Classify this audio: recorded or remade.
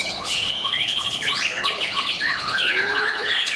remade